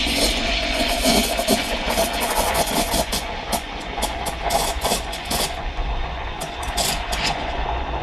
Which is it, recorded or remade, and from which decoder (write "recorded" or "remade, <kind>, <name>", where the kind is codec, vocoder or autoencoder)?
remade, vocoder, Vocos